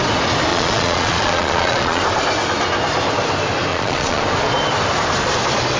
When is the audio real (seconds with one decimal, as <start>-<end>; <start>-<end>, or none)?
0.0-0.5; 2.0-3.7; 4.2-5.8